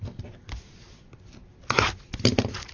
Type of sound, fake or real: real